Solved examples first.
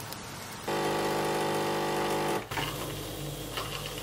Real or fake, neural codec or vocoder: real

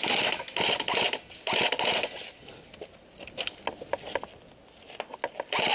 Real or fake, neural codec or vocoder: real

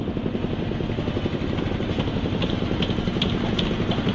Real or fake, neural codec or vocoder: real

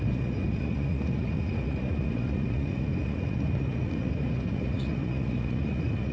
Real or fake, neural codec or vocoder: fake, vocoder, Vocos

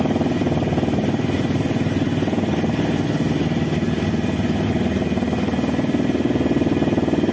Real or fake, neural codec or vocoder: real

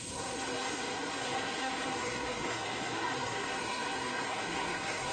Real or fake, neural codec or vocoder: fake, codec, SNAC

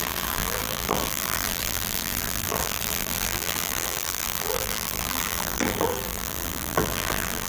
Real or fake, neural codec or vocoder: fake, vocoder, BigVGAN v2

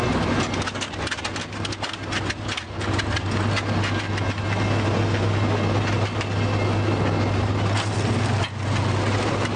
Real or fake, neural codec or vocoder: real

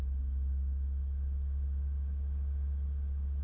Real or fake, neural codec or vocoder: real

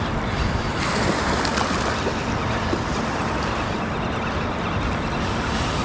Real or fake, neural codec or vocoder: real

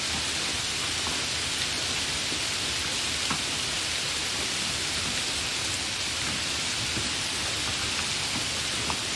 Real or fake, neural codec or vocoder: real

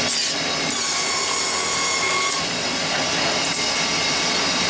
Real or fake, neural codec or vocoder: real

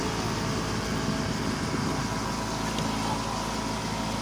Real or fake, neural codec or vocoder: real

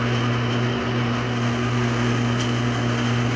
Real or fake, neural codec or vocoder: real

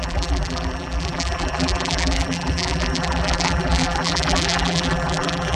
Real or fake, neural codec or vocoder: fake, vocoder, BigVGAN v2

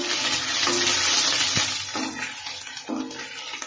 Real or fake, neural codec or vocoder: real